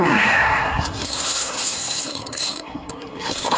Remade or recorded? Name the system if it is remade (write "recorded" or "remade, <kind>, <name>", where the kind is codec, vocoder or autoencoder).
remade, codec, SNAC